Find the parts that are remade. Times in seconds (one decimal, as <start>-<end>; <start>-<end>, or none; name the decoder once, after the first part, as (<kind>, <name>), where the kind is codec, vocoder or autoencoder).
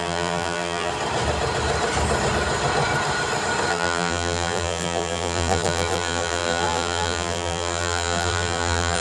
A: 0.0-0.9 (vocoder, BigVGAN v2); 3.7-9.0